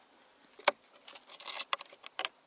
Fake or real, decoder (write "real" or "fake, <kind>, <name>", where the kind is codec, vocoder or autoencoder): real